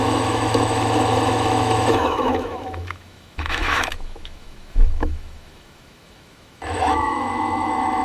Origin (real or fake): fake